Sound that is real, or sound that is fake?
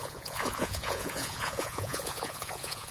fake